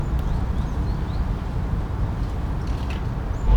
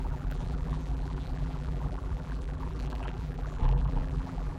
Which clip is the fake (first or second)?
second